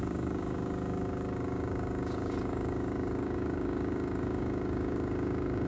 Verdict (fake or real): fake